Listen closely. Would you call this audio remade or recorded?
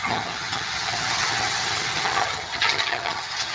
remade